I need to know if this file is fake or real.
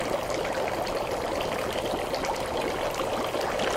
real